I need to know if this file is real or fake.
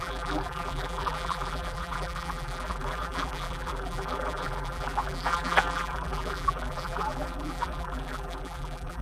fake